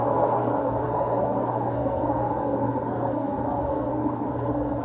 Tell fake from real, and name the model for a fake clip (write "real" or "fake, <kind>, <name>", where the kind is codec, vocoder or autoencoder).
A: fake, codec, SNAC